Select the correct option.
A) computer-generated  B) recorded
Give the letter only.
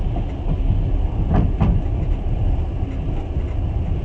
B